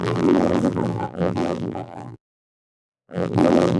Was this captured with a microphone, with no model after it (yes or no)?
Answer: no